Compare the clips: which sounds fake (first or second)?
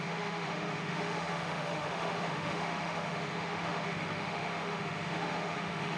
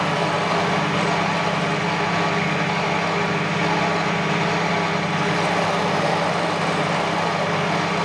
first